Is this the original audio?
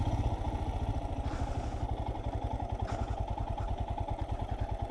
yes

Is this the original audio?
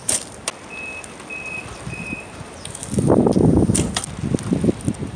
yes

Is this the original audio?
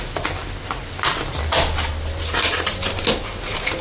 yes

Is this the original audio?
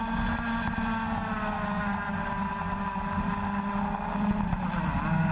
yes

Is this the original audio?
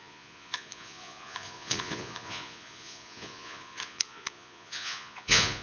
no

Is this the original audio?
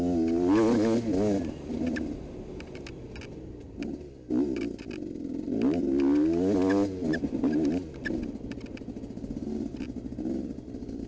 yes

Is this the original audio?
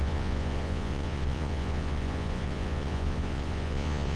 no